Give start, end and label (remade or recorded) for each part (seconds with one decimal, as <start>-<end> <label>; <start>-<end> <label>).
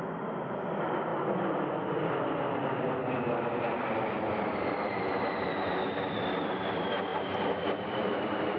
0.0-1.1 remade; 1.1-4.3 recorded; 4.3-7.1 remade; 7.1-7.7 recorded; 7.7-8.6 remade